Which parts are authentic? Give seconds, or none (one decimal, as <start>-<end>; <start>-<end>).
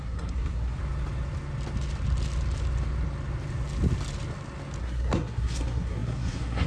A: 0.8-4.8